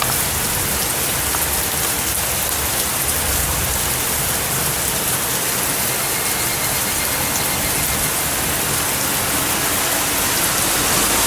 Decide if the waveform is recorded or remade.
recorded